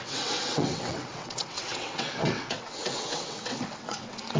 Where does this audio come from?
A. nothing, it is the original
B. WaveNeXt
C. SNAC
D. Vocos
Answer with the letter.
B